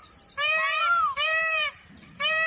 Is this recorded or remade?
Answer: remade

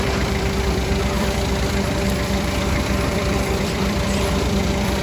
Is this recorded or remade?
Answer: remade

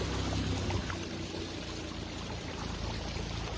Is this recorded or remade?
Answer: recorded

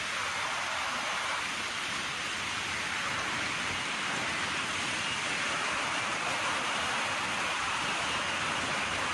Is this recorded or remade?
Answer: recorded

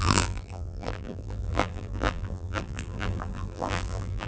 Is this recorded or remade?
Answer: remade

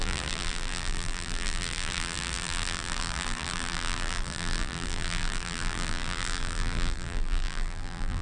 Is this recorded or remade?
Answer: remade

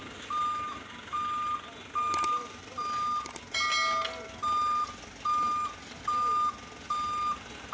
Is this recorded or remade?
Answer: recorded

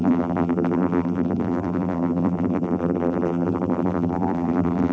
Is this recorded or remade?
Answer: remade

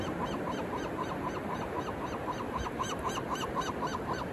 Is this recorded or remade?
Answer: recorded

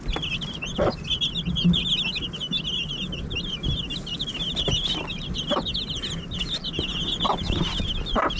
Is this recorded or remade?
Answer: recorded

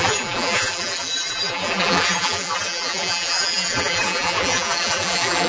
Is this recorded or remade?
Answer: remade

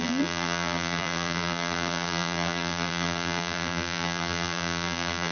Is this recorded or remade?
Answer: remade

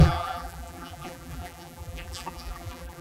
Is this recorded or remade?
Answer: remade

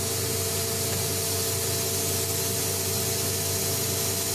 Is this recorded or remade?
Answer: recorded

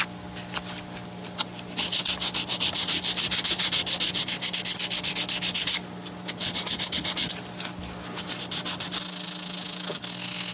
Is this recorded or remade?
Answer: recorded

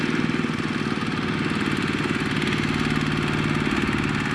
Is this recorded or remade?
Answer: recorded